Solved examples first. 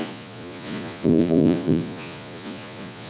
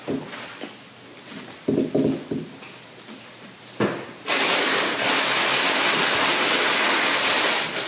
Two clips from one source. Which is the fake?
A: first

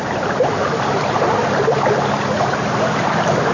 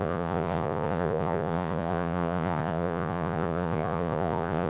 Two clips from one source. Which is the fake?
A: second